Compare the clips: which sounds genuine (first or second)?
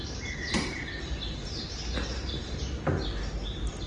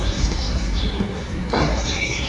first